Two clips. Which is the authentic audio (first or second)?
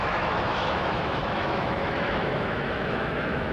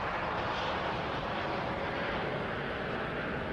second